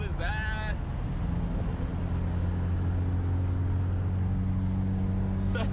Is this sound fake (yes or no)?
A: no